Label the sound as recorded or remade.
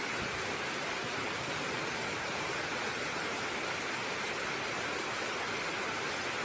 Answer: recorded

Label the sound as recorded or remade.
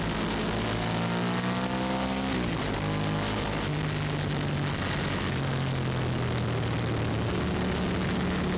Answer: recorded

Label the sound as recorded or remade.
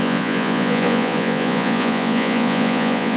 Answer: remade